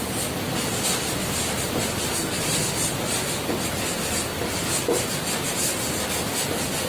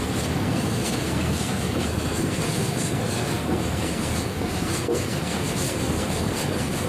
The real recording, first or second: first